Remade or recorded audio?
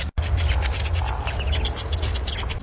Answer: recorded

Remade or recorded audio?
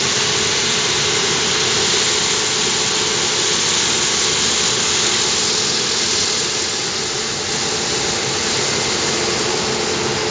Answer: recorded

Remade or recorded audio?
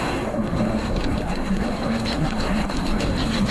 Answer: remade